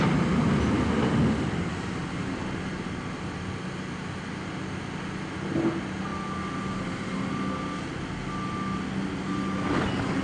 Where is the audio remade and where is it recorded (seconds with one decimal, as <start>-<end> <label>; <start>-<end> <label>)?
0.0-10.2 recorded